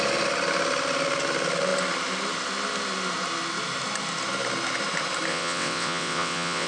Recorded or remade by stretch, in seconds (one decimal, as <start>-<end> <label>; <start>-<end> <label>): 0.0-5.3 recorded; 5.3-6.7 remade